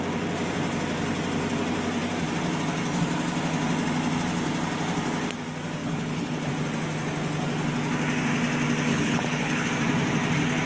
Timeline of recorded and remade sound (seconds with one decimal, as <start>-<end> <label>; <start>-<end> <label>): 0.0-5.8 recorded; 5.8-6.5 remade; 6.5-8.9 recorded; 8.9-9.7 remade; 9.7-10.7 recorded